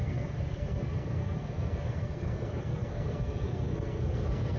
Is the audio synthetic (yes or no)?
yes